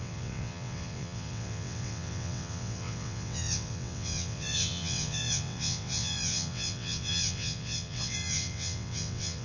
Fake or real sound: fake